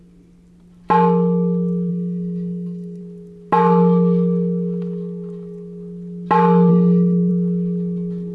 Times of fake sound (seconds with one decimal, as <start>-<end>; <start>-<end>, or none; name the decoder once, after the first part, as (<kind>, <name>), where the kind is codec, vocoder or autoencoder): 1.9-3.0 (codec, SNAC); 6.7-7.3